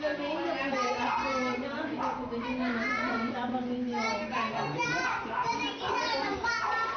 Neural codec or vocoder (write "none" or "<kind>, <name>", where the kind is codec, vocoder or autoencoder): none